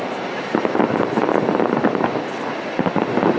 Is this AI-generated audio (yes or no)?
no